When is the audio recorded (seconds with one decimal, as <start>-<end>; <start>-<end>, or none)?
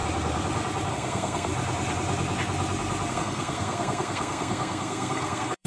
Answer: 0.0-0.9; 1.5-3.1